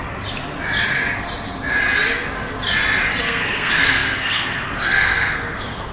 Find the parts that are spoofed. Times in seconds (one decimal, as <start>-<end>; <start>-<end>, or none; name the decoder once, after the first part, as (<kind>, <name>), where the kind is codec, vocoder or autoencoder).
3.2-5.9 (codec, SNAC)